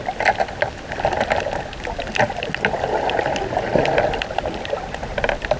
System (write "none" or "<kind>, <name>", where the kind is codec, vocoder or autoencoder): none